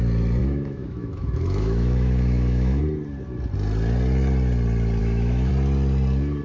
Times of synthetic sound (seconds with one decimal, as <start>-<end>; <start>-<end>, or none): 0.4-2.8; 5.0-5.5